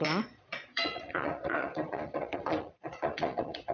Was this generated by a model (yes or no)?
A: yes